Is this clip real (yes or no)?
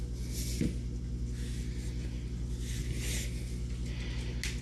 yes